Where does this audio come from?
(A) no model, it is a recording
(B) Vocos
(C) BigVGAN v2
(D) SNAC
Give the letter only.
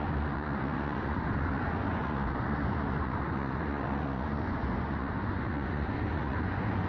B